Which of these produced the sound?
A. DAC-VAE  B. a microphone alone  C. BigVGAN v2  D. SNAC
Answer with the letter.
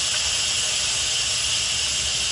B